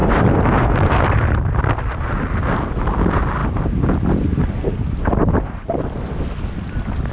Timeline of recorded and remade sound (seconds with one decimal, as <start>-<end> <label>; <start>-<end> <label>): 0.0-1.6 remade; 1.6-7.1 recorded